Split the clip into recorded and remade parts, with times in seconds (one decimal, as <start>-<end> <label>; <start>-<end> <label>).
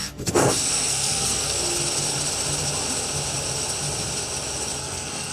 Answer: 0.0-1.6 remade; 1.6-4.8 recorded; 4.8-5.3 remade